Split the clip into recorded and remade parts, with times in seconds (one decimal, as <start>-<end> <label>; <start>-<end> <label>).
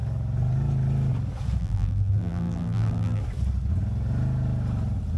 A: 0.0-1.6 recorded; 1.6-3.2 remade; 3.2-5.2 recorded